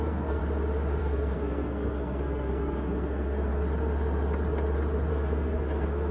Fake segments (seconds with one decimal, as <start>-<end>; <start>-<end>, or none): 0.0-0.4; 1.0-3.5; 5.1-6.1